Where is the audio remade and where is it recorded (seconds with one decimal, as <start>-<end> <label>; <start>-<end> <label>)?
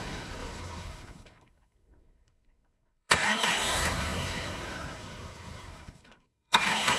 0.0-7.0 remade